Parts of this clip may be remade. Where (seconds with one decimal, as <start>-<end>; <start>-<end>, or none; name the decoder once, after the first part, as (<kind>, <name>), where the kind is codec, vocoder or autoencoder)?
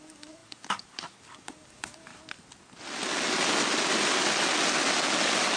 0.0-2.1 (codec, DAC)